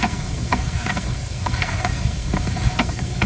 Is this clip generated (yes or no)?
yes